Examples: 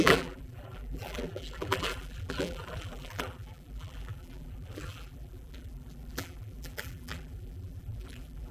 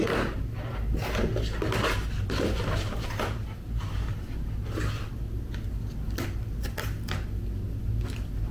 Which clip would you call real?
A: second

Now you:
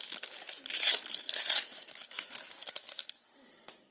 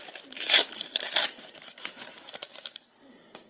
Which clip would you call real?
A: first